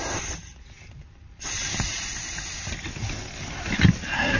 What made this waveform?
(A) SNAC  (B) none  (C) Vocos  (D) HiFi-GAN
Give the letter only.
B